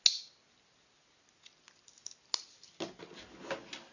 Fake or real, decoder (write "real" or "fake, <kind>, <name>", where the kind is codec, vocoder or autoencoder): real